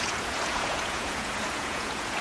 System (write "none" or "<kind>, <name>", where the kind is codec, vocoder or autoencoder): vocoder, Vocos